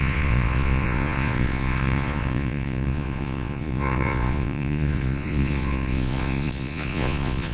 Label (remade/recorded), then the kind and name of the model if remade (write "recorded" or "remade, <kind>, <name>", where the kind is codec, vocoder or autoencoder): remade, vocoder, Vocos